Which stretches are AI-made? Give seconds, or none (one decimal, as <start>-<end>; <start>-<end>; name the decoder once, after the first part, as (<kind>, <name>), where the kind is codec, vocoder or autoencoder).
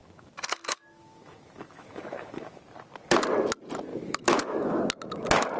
0.0-2.6 (autoencoder, DAC-VAE); 3.9-4.8